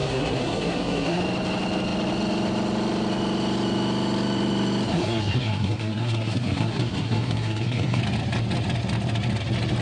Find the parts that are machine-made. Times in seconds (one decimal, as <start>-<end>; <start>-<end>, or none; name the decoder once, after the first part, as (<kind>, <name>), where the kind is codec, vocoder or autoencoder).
0.0-1.2 (codec, SNAC); 4.9-8.0